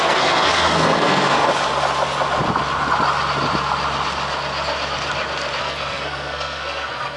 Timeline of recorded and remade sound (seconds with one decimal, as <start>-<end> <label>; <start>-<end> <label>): 0.0-1.5 remade; 1.5-5.6 recorded; 5.6-7.2 remade